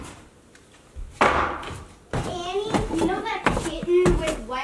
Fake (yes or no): no